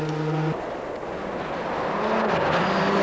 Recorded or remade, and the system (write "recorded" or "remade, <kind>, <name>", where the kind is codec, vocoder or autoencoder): recorded